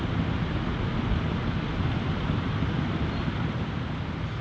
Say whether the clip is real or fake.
real